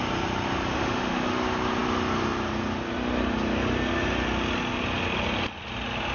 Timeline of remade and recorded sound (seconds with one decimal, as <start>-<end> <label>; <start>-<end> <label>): 0.0-0.7 recorded; 0.7-1.3 remade; 1.3-6.1 recorded